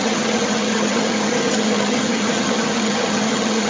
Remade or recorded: remade